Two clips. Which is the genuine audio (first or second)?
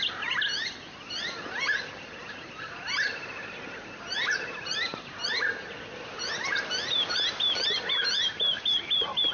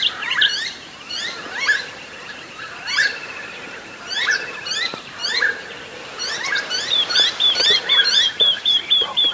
first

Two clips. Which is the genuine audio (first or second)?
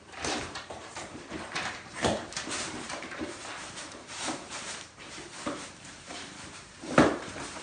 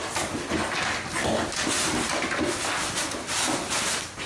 second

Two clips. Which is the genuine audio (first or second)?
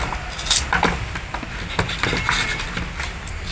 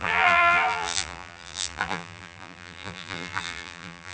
first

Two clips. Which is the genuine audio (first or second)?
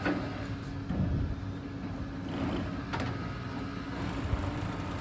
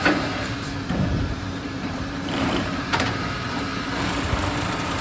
first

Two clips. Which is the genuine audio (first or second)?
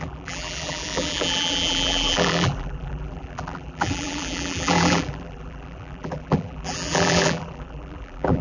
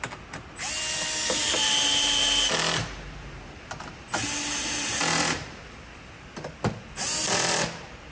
second